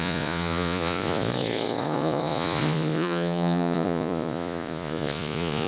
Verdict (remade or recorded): remade